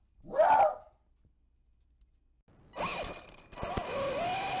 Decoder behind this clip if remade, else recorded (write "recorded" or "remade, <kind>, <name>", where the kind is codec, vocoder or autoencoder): recorded